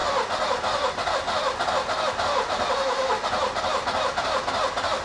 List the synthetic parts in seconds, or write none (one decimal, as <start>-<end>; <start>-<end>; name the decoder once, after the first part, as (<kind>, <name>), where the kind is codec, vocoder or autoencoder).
none